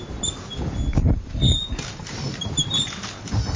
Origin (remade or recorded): recorded